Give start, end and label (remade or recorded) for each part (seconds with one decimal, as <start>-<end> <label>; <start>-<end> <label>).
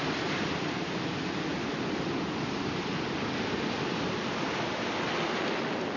0.0-6.0 recorded